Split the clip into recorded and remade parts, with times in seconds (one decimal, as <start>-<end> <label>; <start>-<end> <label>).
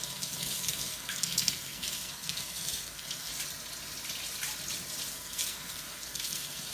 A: 0.0-3.3 remade; 3.3-5.1 recorded; 5.1-6.7 remade